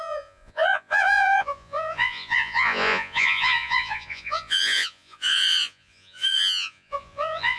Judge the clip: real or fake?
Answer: fake